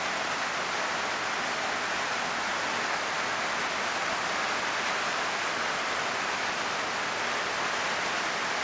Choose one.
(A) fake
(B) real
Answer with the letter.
B